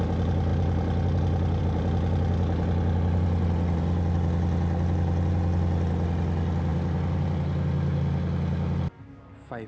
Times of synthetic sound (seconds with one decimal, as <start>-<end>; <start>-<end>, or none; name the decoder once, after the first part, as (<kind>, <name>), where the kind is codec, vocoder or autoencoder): none